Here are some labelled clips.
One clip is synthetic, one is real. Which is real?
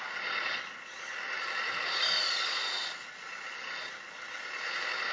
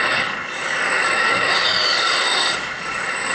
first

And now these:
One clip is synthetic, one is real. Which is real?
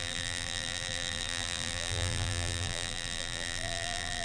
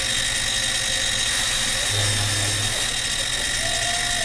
second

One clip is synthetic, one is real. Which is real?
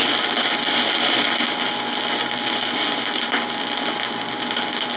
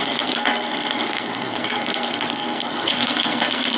first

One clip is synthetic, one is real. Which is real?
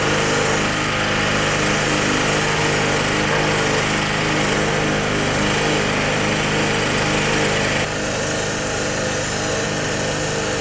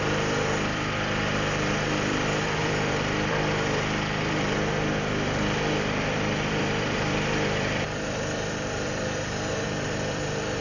first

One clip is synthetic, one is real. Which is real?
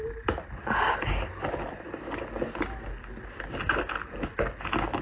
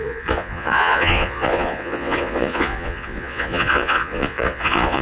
first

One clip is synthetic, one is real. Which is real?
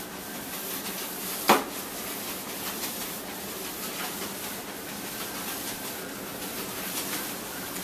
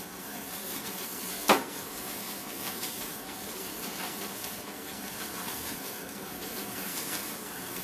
first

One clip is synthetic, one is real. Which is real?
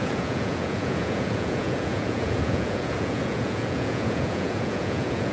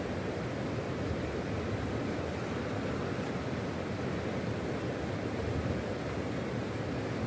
second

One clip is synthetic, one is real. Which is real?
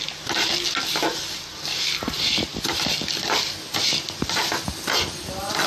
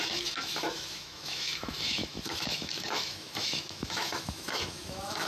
first